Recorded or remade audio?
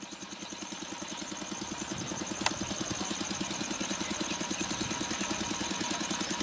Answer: recorded